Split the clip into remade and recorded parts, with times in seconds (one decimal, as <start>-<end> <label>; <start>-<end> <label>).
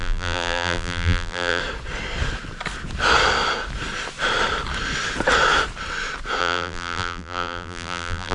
0.0-1.6 remade; 1.6-6.4 recorded; 6.4-8.3 remade